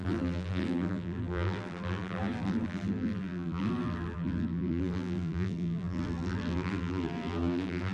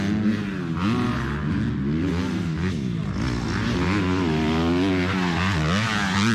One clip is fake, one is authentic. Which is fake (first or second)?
first